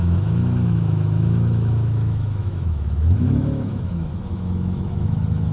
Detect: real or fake fake